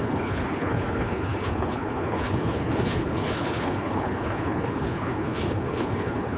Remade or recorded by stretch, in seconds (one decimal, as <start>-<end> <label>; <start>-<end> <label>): 0.0-6.4 remade